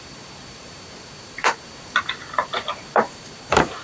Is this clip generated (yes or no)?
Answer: yes